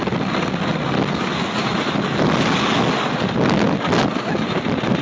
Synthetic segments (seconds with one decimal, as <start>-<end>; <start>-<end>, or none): none